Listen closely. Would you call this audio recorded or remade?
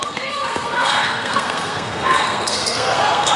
remade